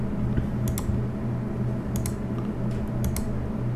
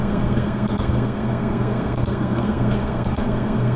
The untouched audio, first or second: first